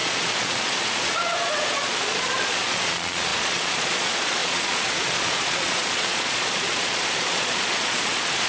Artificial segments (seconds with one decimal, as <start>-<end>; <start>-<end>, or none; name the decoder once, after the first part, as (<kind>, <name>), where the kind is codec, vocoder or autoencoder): 0.0-8.5 (vocoder, Vocos)